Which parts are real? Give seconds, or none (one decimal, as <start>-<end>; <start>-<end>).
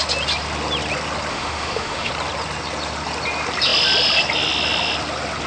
0.0-1.3; 2.1-5.5